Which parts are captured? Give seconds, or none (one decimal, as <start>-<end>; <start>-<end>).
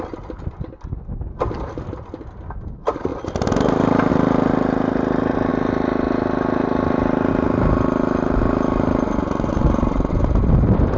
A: 0.0-11.0